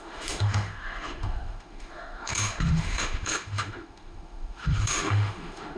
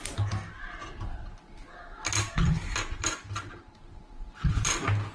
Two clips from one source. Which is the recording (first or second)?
second